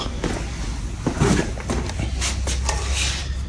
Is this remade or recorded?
recorded